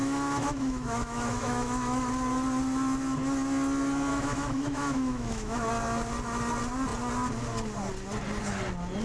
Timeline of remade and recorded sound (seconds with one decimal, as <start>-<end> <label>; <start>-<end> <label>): 0.0-2.1 remade; 2.1-4.1 recorded; 4.1-5.7 remade; 5.7-9.0 recorded